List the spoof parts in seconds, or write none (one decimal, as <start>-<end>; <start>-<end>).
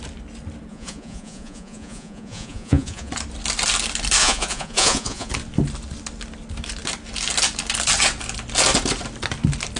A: 0.7-3.1; 4.2-5.3